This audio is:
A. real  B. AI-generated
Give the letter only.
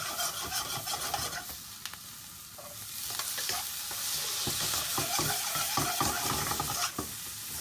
A